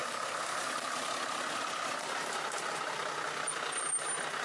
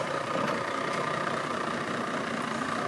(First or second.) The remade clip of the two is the second